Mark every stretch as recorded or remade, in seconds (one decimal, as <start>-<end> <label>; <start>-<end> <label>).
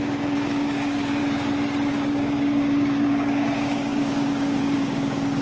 0.0-1.2 remade; 1.2-1.9 recorded; 1.9-5.4 remade